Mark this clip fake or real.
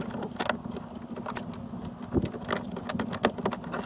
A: real